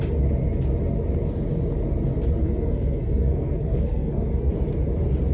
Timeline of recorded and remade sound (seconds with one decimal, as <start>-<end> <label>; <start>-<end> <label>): 0.0-2.4 recorded; 2.4-4.5 remade; 4.5-5.3 recorded